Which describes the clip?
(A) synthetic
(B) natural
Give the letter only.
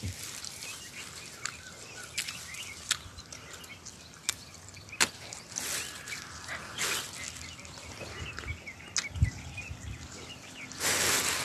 B